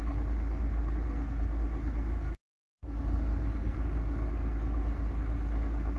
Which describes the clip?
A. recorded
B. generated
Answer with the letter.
B